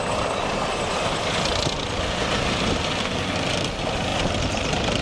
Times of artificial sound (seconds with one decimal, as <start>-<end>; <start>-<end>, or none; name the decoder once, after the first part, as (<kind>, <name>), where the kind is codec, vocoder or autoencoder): none